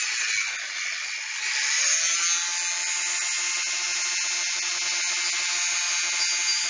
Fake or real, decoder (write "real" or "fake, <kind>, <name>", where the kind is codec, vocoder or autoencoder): real